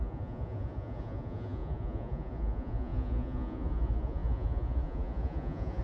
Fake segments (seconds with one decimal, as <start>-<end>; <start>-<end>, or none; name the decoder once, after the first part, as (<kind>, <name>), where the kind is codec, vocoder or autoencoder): 0.0-5.8 (vocoder, Vocos)